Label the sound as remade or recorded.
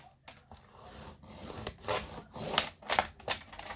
recorded